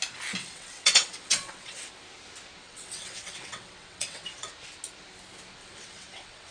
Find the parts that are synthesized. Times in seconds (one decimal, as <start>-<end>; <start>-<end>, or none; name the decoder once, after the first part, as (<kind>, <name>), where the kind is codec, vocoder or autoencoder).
0.4-1.9 (vocoder, WaveNeXt); 2.6-4.5; 5.6-6.5